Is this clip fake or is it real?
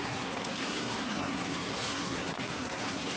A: fake